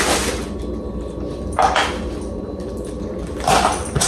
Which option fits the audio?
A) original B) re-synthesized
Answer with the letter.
A